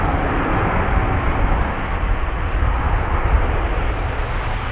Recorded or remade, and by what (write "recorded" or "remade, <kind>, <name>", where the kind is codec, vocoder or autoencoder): recorded